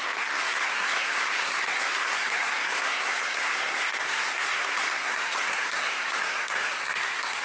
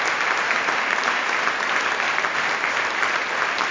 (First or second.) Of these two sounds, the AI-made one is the first